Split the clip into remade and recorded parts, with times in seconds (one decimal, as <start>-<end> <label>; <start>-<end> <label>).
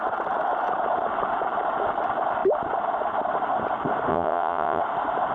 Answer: 0.0-4.1 recorded; 4.1-4.8 remade; 4.8-5.3 recorded